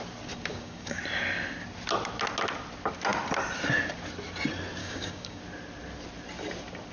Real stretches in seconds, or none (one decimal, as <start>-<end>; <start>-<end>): 0.0-0.5; 1.0-4.8; 5.4-6.9